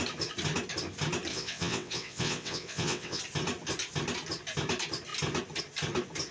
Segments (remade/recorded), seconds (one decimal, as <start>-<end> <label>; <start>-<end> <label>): 0.0-1.3 recorded; 1.3-3.2 remade; 3.2-6.3 recorded